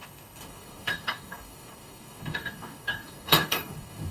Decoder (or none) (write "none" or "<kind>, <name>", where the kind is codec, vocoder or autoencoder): codec, DAC